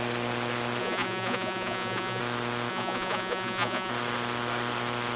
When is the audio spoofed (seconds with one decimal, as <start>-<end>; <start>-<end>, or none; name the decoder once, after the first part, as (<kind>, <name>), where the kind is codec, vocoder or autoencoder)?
0.8-2.2 (vocoder, Vocos); 2.7-3.9